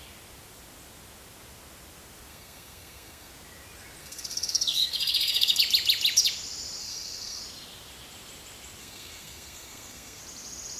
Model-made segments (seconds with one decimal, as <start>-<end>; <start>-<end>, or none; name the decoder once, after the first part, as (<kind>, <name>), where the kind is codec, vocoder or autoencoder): 2.3-3.3 (codec, SNAC); 4.0-5.6; 6.8-7.4; 8.8-10.2

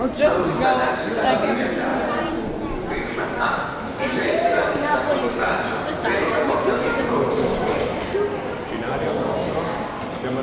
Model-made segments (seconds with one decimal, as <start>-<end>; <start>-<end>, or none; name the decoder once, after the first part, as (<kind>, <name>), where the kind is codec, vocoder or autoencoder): none

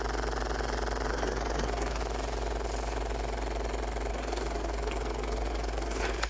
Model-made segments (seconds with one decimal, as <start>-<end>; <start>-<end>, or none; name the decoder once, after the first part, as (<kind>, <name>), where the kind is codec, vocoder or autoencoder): 1.1-2.0 (codec, SNAC); 4.1-6.3

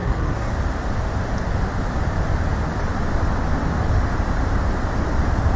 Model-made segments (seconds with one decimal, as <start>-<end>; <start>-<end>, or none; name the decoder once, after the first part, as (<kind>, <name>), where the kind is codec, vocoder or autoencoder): 0.0-0.5 (codec, SNAC)

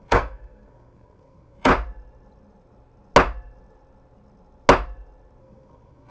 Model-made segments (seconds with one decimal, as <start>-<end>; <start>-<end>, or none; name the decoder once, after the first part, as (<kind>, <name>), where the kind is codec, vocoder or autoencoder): 0.0-1.7 (codec, SNAC); 5.4-6.1

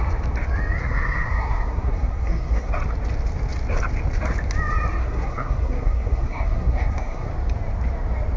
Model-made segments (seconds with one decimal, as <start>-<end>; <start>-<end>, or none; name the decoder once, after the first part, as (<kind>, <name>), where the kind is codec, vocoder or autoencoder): 0.8-2.7 (codec, SNAC); 5.0-7.3

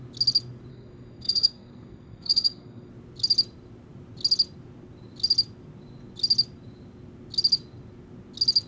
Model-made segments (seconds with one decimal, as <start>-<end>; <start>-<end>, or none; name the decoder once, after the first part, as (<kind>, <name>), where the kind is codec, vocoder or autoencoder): 0.7-2.9 (codec, SNAC)